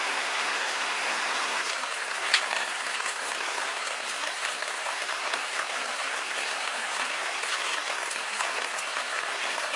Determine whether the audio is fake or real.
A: fake